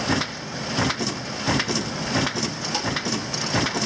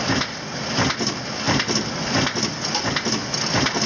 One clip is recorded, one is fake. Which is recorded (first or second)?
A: second